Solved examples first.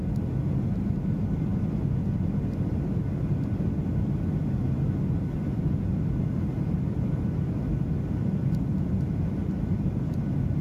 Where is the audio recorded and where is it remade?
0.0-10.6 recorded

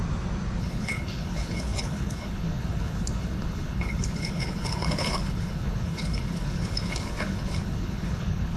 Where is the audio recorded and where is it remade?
0.0-0.6 recorded; 0.6-8.6 remade